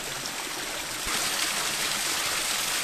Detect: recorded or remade recorded